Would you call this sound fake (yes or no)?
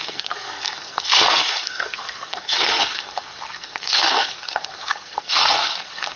yes